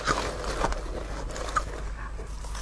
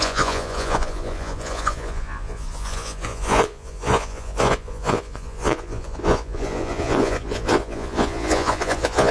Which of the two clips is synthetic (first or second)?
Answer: second